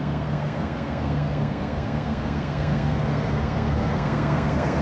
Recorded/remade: remade